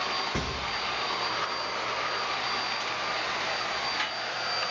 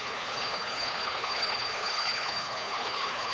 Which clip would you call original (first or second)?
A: first